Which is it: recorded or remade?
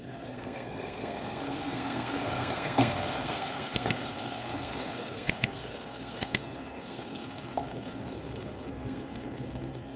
remade